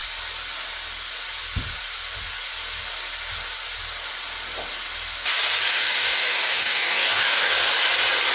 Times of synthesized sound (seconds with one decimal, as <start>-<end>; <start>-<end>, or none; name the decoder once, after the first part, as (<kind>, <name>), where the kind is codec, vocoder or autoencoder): 5.7-7.5 (codec, DAC)